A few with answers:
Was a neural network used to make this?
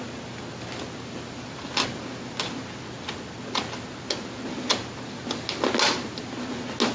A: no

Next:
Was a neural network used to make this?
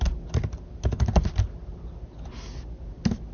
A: no